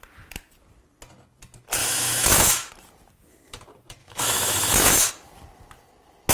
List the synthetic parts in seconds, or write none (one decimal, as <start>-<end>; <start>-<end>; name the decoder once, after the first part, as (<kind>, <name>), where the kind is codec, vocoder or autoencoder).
1.8-2.7 (autoencoder, DAC-VAE); 4.0-5.1